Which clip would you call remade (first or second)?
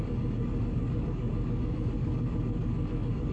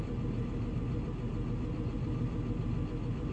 first